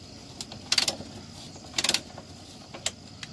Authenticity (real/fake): real